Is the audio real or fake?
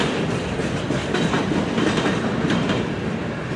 fake